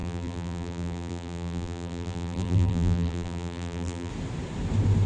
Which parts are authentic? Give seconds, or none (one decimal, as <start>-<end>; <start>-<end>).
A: 4.1-5.1